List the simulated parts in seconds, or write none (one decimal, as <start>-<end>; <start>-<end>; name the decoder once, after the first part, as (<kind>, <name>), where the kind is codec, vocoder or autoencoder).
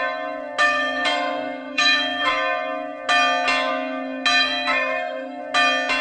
0.6-2.3 (codec, SNAC); 4.4-5.4